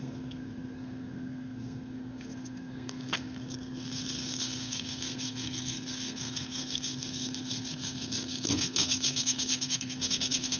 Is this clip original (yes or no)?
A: no